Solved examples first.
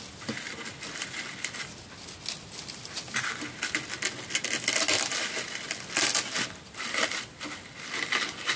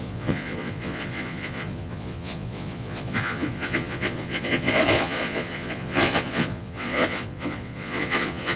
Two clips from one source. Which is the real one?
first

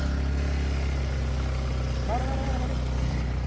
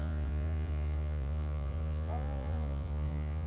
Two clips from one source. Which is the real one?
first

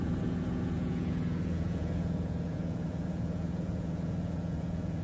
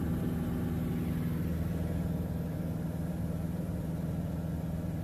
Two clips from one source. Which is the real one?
second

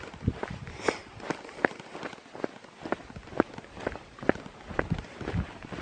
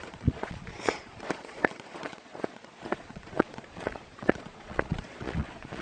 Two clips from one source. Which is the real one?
first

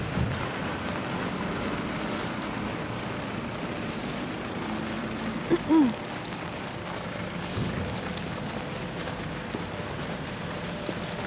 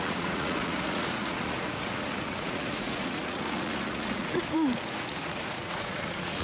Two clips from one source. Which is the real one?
first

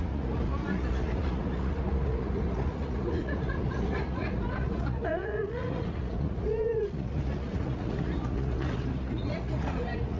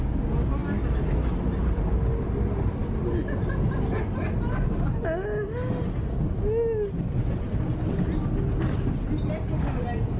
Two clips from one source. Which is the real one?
second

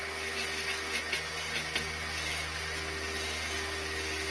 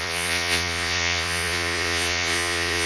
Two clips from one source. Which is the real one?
first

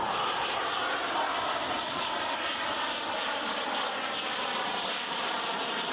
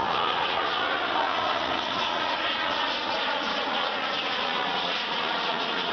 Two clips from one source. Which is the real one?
first